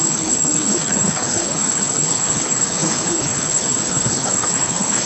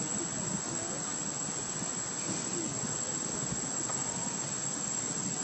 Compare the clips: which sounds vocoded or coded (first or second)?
first